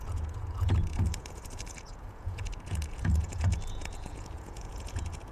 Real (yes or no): no